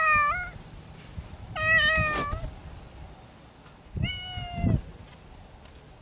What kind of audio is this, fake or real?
real